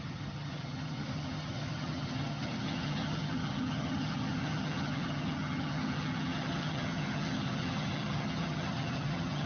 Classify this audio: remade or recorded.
remade